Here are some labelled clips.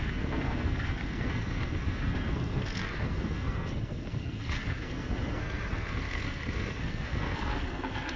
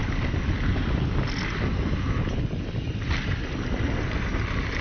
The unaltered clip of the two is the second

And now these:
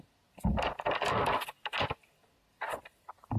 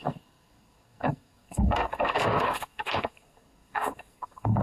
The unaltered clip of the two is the first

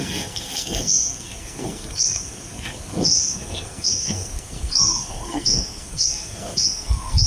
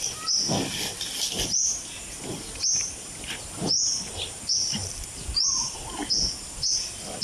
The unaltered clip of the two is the second